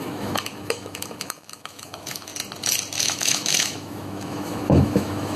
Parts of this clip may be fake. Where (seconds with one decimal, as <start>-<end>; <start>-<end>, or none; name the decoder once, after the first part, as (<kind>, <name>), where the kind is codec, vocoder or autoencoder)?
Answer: 0.0-2.3 (autoencoder, DAC-VAE); 3.0-5.4